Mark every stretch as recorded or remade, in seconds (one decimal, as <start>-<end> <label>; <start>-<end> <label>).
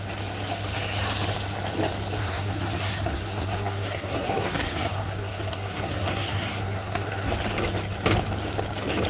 0.0-2.2 recorded; 2.2-7.3 remade; 7.3-9.1 recorded